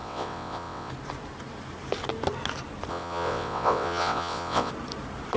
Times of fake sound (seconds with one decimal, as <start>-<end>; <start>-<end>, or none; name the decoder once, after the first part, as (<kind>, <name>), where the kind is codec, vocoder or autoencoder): 0.0-0.9 (vocoder, WaveNeXt); 2.9-4.7